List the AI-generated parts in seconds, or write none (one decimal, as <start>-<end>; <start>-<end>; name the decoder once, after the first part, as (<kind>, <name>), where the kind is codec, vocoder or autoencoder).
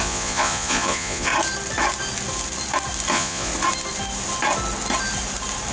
0.0-1.3 (vocoder, Vocos); 3.1-3.5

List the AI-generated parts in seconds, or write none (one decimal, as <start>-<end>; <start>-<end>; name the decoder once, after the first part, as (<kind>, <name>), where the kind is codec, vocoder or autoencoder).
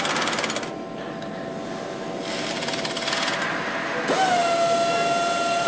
none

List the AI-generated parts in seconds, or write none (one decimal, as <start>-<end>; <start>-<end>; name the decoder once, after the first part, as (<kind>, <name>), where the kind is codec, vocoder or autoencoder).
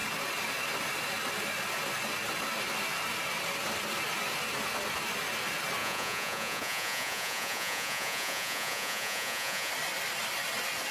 5.8-9.7 (vocoder, Vocos)